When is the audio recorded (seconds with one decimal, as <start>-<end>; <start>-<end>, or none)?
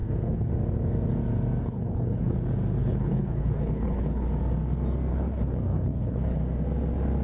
0.5-1.6; 2.3-2.8; 4.3-5.1; 6.4-7.2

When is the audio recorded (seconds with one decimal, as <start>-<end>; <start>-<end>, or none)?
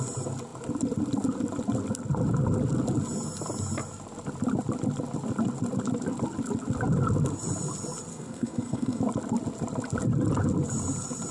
0.0-8.1; 9.0-11.3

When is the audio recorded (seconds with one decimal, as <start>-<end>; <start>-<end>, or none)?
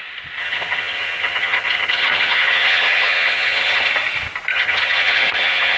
0.0-0.4; 3.9-4.5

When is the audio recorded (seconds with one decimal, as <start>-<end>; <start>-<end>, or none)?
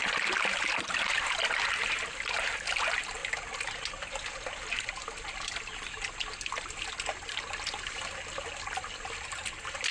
0.0-9.9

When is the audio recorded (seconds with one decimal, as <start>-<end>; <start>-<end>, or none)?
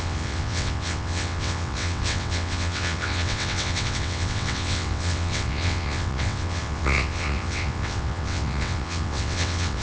none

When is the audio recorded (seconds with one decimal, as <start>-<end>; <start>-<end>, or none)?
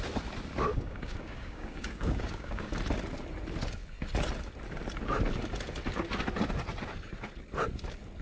0.0-0.7; 2.7-8.2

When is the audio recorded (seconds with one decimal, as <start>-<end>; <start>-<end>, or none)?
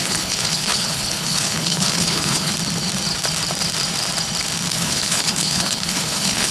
2.5-4.7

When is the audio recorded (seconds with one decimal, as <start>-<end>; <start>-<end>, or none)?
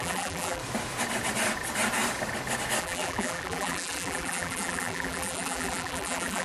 0.6-2.8